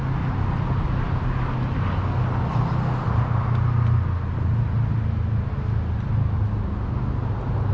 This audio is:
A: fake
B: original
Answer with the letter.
B